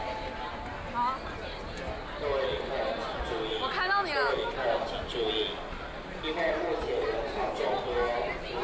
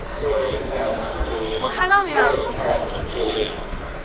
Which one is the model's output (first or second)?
second